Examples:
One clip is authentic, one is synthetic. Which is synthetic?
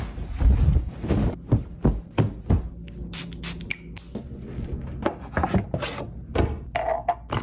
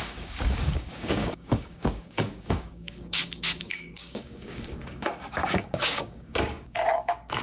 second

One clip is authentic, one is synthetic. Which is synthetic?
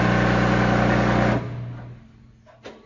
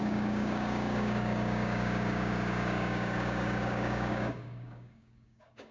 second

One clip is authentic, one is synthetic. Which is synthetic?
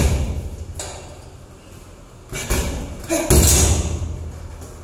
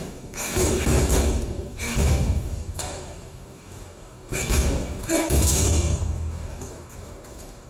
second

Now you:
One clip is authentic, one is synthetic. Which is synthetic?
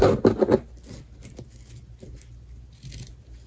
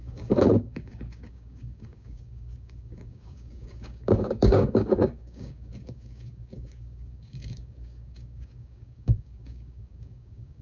second